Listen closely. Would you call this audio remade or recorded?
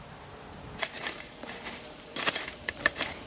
remade